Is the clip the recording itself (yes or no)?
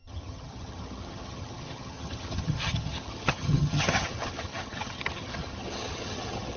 no